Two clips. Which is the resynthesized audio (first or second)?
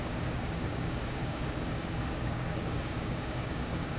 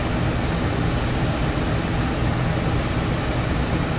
first